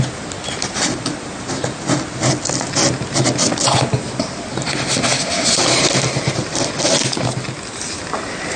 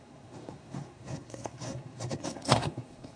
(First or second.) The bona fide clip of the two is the first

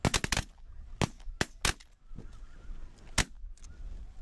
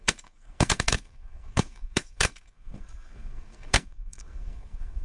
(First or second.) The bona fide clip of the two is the first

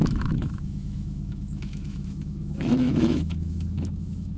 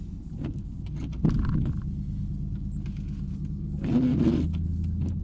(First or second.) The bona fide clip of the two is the second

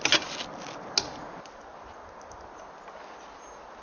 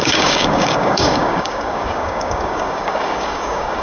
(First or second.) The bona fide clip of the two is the first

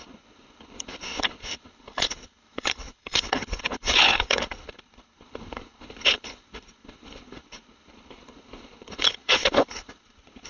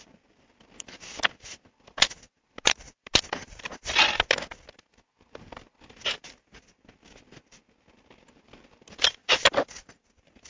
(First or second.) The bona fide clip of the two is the second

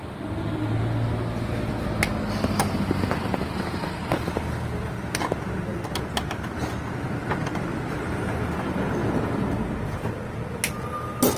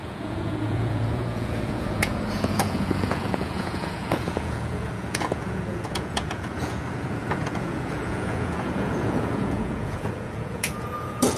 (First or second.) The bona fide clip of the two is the first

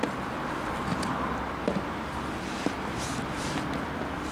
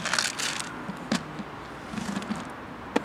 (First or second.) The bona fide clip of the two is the second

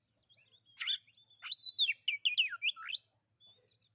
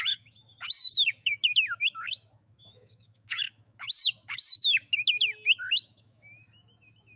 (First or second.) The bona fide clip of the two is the first